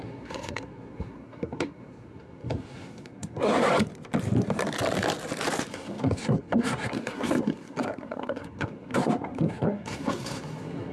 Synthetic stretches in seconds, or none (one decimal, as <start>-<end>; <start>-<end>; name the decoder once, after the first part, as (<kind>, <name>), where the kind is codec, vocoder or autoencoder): 0.0-3.7 (codec, SNAC); 5.7-10.9